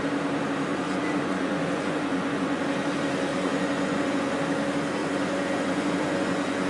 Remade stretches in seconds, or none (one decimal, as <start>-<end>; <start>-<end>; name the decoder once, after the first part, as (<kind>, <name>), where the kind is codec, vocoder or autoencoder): 0.7-2.6 (vocoder, Vocos); 3.3-4.4; 5.0-6.7

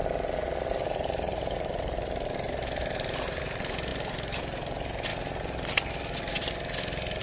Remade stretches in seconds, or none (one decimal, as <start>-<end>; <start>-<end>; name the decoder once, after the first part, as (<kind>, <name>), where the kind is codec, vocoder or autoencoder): 0.8-5.1 (vocoder, BigVGAN v2)